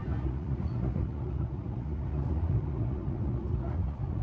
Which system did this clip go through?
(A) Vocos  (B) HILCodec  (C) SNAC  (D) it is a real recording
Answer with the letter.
A